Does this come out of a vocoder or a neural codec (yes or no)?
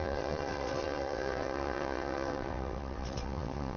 yes